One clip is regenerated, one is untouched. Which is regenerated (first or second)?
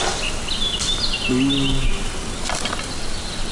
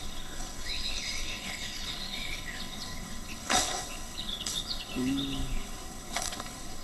second